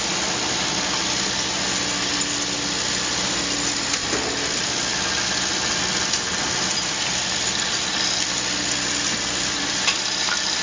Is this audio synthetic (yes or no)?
no